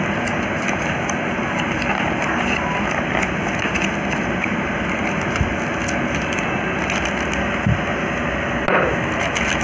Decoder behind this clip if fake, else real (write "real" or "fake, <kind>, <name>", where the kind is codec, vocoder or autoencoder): real